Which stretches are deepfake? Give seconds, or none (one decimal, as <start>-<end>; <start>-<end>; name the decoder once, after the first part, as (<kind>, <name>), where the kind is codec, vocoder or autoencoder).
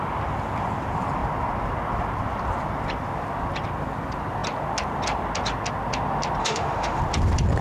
6.4-7.0 (autoencoder, DAC-VAE)